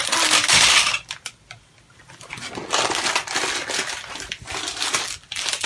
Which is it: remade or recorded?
recorded